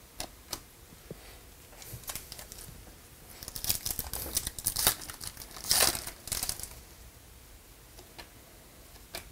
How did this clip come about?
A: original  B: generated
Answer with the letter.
A